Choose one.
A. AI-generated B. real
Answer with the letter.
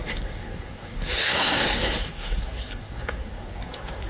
A